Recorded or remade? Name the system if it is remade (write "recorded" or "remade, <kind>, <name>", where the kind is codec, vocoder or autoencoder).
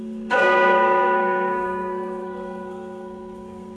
remade, codec, SNAC